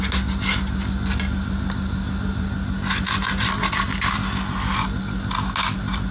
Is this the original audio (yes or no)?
yes